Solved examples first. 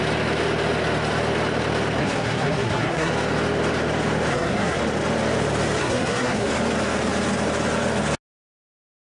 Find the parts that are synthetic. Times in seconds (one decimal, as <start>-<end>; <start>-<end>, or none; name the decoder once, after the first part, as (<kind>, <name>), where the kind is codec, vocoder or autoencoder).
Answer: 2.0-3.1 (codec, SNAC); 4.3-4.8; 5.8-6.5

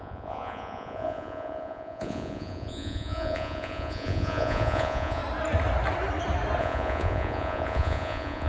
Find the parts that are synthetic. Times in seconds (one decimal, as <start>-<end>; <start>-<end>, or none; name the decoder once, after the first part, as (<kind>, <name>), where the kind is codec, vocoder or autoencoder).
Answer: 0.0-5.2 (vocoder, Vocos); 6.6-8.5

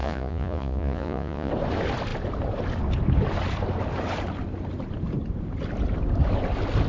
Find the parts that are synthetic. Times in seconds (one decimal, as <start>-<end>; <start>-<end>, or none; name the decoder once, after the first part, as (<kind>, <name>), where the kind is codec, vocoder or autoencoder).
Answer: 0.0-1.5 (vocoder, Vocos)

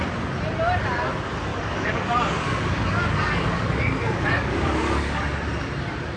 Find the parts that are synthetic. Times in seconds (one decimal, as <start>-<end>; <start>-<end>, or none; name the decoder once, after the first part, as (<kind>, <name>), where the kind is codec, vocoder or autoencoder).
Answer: 1.5-5.2 (codec, DAC)